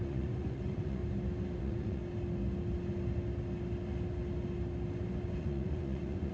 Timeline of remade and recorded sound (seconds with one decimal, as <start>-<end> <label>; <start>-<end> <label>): 0.0-1.0 remade; 1.0-1.6 recorded; 1.6-2.0 remade; 2.0-5.4 recorded; 5.4-6.3 remade